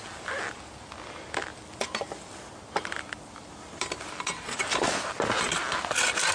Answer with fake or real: real